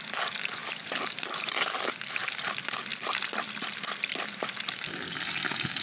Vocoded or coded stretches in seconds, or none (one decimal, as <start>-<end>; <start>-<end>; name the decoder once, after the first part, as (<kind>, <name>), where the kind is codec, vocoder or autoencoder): none